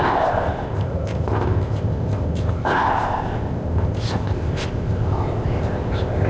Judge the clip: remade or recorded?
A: remade